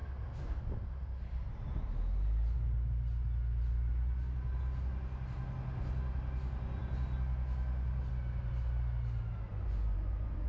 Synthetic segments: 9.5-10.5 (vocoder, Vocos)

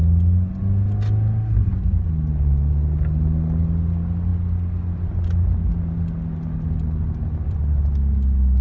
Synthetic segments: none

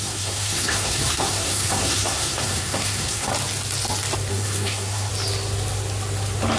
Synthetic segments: 0.0-3.3 (codec, SNAC); 4.3-5.1

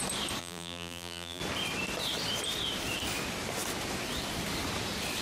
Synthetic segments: 0.4-1.4 (vocoder, BigVGAN v2)

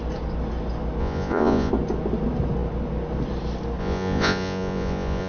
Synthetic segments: 1.0-1.7 (vocoder, Vocos); 3.8-5.3

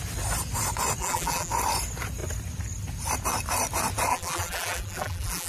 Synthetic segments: 1.0-1.5 (vocoder, BigVGAN v2); 4.1-5.5

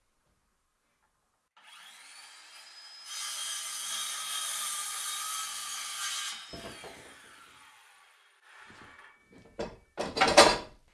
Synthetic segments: 9.2-10.0 (vocoder, BigVGAN v2)

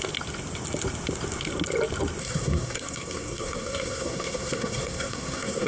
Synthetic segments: 2.2-5.7 (codec, SNAC)